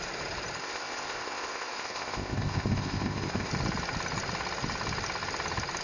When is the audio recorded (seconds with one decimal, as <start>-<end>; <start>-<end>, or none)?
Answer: 0.0-0.6; 3.5-5.8